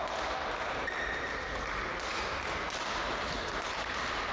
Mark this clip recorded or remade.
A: recorded